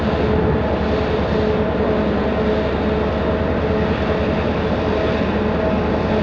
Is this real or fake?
real